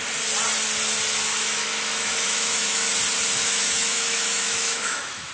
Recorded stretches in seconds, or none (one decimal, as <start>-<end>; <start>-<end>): 0.0-1.3; 2.9-3.4